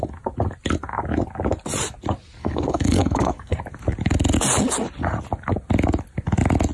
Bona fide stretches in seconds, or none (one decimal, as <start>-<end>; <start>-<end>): 0.0-2.4; 3.6-6.7